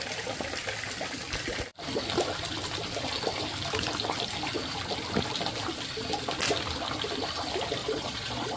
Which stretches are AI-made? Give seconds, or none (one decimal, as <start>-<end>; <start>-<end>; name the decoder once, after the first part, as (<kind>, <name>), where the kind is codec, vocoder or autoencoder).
7.8-8.6 (vocoder, Vocos)